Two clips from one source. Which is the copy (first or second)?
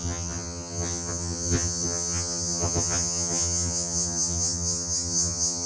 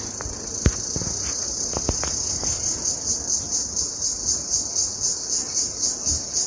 first